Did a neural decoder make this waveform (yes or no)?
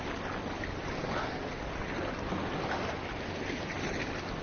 no